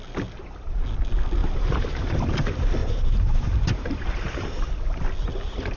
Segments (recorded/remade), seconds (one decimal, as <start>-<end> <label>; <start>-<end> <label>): 0.0-1.4 recorded; 1.4-2.3 remade; 2.3-2.8 recorded; 2.8-4.6 remade; 4.6-5.8 recorded

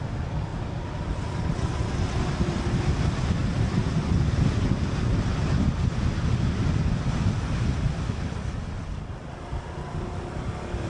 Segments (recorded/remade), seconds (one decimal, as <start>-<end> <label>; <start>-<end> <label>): 0.0-0.5 recorded; 0.5-2.8 remade; 2.8-3.4 recorded; 3.4-4.0 remade; 4.0-10.9 recorded